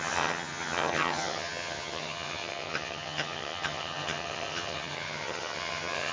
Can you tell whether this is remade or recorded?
remade